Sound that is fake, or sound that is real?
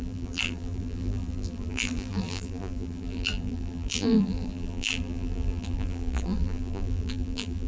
fake